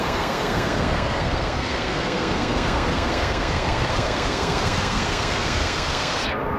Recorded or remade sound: remade